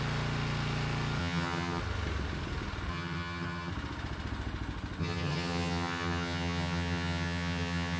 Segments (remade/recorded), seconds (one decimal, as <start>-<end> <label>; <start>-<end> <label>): 0.0-1.2 recorded; 1.2-1.8 remade; 1.8-2.9 recorded; 2.9-3.7 remade; 3.7-5.0 recorded; 5.0-8.0 remade